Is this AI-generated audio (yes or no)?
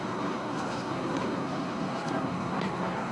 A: yes